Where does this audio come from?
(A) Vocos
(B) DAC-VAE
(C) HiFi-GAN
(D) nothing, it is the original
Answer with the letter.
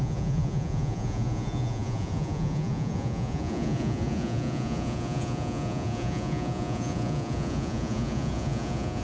A